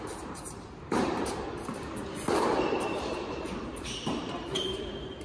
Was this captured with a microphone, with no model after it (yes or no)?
no